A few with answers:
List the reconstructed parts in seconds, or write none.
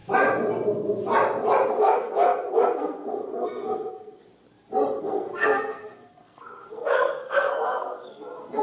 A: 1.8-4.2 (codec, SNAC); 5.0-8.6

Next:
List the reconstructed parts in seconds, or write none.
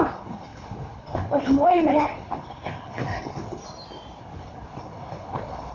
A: 0.0-3.6 (codec, HILCodec); 4.2-5.7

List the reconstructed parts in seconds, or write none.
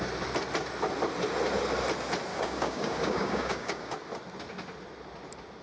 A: 2.3-3.9 (codec, DAC)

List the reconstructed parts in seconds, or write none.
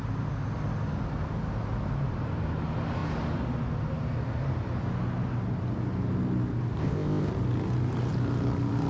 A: 6.8-7.3 (codec, ZipCodec)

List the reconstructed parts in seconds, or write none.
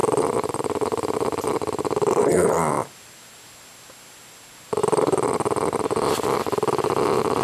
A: none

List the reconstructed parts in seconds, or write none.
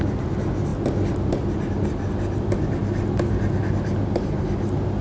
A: none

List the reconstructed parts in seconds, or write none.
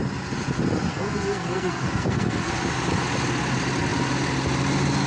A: 0.9-2.5 (codec, SNAC)